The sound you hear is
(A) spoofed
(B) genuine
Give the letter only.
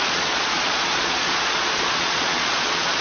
A